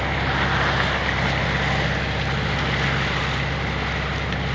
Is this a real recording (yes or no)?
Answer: yes